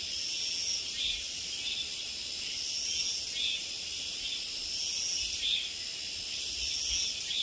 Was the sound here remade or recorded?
recorded